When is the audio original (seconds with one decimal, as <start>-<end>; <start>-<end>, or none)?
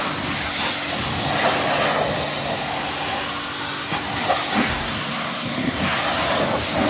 0.0-4.7; 6.0-6.9